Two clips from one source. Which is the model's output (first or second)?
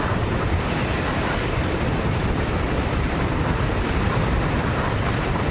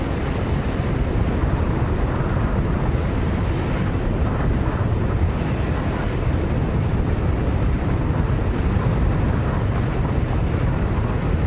first